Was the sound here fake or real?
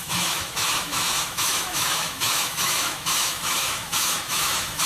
fake